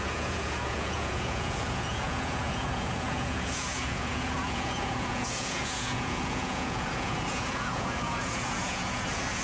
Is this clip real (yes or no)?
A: no